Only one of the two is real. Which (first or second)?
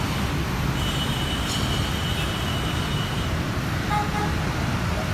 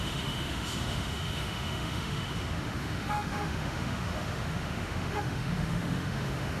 first